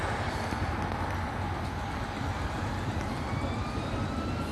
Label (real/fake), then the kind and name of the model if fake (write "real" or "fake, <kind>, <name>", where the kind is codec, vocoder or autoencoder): real